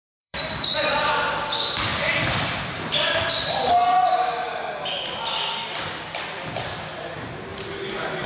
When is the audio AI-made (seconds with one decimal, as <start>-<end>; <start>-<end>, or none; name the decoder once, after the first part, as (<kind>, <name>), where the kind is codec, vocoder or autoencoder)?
0.0-1.1 (vocoder, BigVGAN v2); 1.9-3.3; 7.5-8.3